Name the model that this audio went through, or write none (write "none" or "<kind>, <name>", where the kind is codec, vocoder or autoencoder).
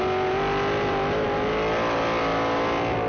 none